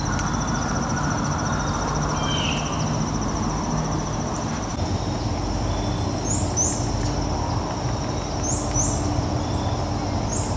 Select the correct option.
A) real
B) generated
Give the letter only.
A